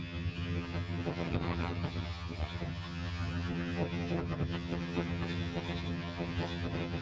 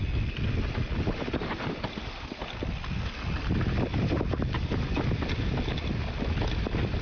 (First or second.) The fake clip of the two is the first